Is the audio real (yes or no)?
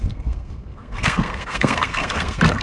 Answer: no